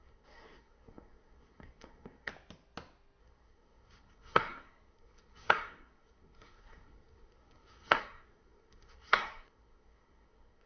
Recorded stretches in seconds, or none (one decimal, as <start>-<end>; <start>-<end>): 2.3-3.2